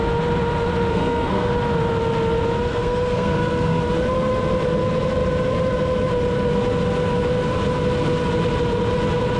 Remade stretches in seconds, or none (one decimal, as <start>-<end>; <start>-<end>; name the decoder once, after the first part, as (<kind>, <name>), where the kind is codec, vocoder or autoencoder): 0.9-1.5 (codec, SNAC); 2.7-3.8